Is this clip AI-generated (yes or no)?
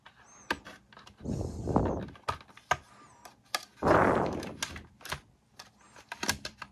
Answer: no